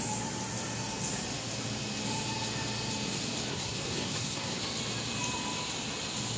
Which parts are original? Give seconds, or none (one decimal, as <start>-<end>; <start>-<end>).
0.0-3.5; 4.6-6.4